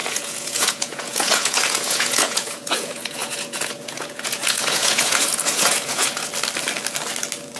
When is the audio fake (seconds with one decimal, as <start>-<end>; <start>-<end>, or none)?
0.0-6.3